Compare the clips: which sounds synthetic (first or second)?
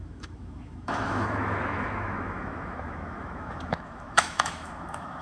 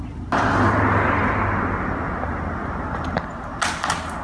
first